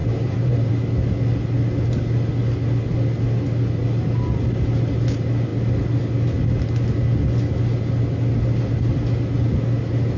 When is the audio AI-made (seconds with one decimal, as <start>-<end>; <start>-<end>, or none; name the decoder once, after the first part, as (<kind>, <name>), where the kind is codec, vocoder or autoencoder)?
0.0-0.7 (vocoder, BigVGAN v2)